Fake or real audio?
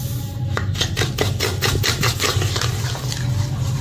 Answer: real